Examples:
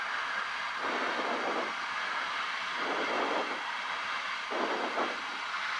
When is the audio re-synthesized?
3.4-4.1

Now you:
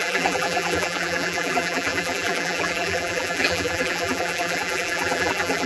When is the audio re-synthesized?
0.0-5.7

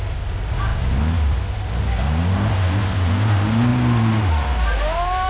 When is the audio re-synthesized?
0.7-1.8

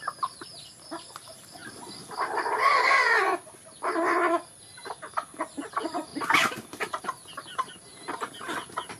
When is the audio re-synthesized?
0.0-1.6; 2.6-7.9